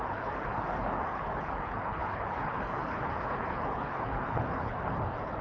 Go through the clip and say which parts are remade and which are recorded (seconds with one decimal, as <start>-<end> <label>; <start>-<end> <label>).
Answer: 0.0-5.4 remade